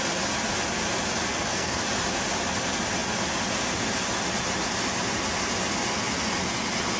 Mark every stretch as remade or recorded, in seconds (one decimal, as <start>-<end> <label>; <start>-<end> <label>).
0.0-1.3 recorded; 1.3-1.8 remade; 1.8-7.0 recorded